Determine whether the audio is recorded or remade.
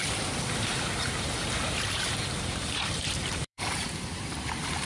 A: remade